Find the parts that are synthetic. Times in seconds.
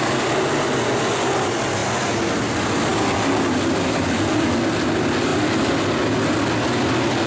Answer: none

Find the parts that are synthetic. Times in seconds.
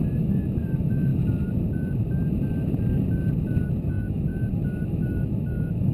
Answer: 0.0-1.1; 3.9-4.3; 4.9-5.9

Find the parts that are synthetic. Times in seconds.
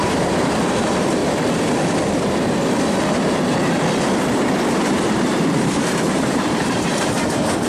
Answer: 0.0-1.2; 5.1-7.7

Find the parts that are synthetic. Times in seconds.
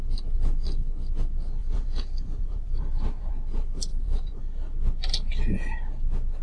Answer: 1.6-3.3; 3.9-4.4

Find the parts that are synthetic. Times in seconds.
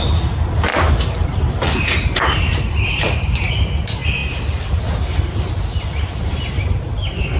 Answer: 0.7-3.5; 4.2-4.8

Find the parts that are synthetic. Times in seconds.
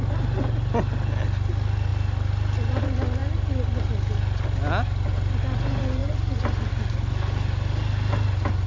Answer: none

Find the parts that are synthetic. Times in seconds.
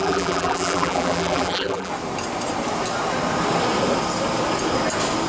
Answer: 0.0-1.9